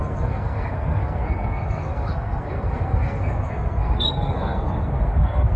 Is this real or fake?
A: fake